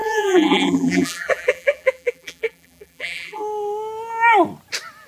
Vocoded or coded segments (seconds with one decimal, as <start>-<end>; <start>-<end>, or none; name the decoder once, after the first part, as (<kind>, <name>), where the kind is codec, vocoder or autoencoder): 0.0-3.4 (vocoder, BigVGAN v2)